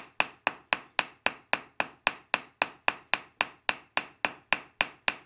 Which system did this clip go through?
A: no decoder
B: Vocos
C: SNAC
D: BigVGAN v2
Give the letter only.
A